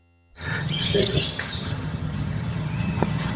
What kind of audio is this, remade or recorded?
remade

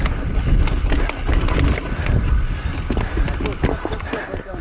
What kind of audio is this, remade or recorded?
recorded